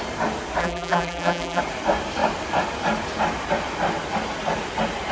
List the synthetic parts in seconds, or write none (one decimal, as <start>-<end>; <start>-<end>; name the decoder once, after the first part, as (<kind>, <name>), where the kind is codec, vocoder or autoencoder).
0.6-1.6 (vocoder, BigVGAN v2)